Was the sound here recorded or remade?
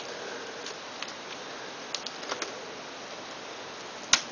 recorded